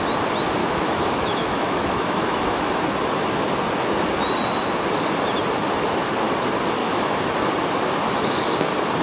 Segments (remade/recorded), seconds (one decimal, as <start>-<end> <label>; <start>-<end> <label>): 0.0-0.6 recorded; 0.6-2.7 remade; 2.7-6.8 recorded; 6.8-7.3 remade; 7.3-9.0 recorded